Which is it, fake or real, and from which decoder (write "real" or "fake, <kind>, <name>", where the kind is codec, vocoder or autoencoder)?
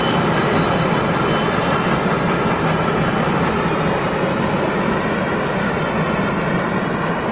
real